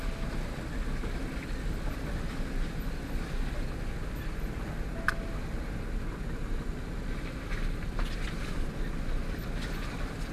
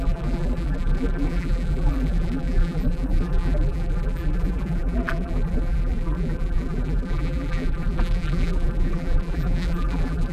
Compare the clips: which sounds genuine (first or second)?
first